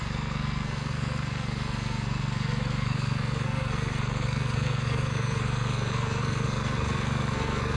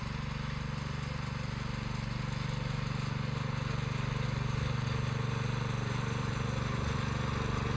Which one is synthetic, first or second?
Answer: first